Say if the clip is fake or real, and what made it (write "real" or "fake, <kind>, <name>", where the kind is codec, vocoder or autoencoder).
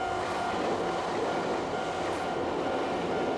real